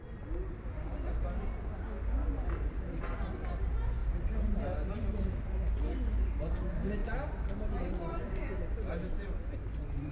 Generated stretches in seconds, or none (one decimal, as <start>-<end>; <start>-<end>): none